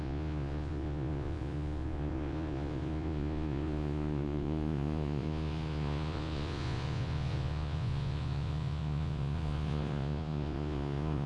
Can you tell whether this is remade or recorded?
remade